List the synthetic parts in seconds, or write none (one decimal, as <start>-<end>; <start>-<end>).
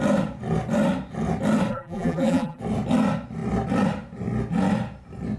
1.7-2.6